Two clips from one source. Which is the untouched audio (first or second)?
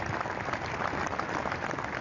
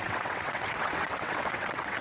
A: first